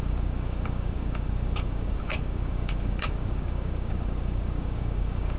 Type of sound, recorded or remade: remade